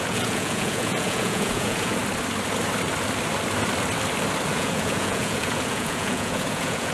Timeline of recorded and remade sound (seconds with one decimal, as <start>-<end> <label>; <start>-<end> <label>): 0.0-2.0 remade; 2.0-4.5 recorded; 4.5-6.9 remade